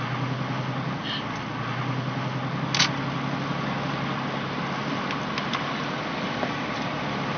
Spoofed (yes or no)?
no